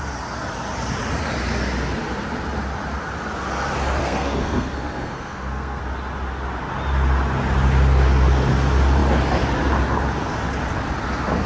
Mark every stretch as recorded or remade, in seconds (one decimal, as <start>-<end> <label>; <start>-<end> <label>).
0.0-4.0 recorded; 4.0-5.8 remade; 5.8-11.5 recorded